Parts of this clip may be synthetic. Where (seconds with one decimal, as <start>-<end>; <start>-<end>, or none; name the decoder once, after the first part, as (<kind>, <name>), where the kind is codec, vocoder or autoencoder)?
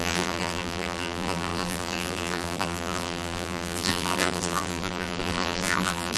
0.0-6.2 (vocoder, BigVGAN v2)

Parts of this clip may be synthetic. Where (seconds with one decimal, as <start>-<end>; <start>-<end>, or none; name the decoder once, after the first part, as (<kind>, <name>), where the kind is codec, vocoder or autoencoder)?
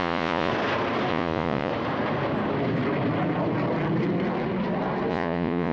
0.0-0.5 (vocoder, Vocos); 1.1-1.7; 5.1-5.7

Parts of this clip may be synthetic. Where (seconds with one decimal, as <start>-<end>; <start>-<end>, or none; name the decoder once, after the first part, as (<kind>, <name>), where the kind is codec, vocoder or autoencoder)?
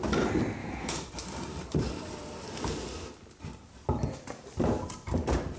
0.6-1.1 (autoencoder, DAC-VAE)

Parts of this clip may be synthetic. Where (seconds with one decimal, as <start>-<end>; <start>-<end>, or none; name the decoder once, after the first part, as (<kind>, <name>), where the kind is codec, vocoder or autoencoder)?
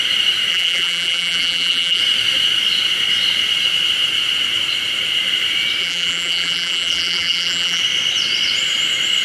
0.5-2.0 (vocoder, BigVGAN v2); 5.8-7.8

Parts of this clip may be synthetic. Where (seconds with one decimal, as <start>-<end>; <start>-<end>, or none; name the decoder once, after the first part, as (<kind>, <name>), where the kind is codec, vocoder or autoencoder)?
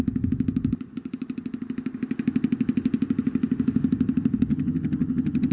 4.5-5.5 (vocoder, HiFi-GAN)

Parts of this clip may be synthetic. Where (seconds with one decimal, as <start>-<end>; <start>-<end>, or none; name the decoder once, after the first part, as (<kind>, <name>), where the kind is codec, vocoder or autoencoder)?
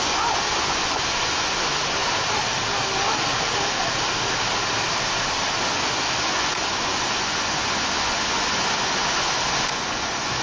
0.0-2.0 (vocoder, Vocos); 5.6-10.4